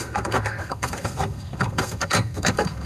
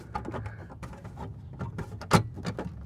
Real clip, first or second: second